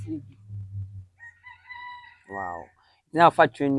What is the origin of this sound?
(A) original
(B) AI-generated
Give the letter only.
A